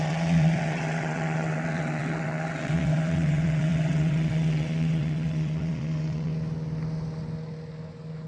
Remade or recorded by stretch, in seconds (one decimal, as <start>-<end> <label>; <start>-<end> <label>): 0.0-6.3 remade; 6.3-8.3 recorded